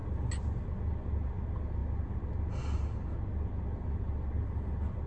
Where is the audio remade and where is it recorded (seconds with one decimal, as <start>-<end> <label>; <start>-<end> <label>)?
0.0-5.1 recorded